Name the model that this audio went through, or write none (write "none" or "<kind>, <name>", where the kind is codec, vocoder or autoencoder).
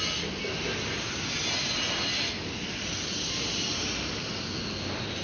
none